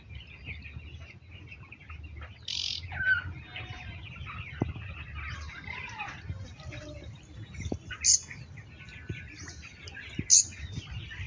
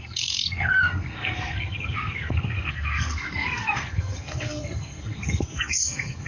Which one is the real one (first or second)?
first